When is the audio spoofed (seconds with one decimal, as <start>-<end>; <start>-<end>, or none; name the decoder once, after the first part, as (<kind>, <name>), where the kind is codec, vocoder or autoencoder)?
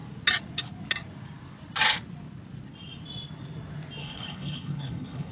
4.0-5.3 (codec, HILCodec)